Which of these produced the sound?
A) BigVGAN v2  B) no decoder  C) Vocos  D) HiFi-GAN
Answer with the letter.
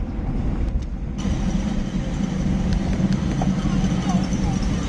B